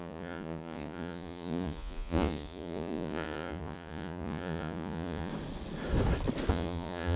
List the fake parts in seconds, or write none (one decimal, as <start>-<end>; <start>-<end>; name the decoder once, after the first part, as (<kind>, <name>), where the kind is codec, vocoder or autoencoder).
0.0-5.3 (vocoder, Vocos); 6.5-7.2